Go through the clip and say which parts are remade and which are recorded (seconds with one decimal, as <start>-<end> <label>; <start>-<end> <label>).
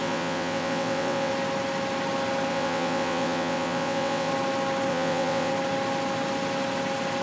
0.0-1.3 remade; 1.3-2.5 recorded; 2.5-4.3 remade; 4.3-4.9 recorded; 4.9-5.5 remade; 5.5-7.2 recorded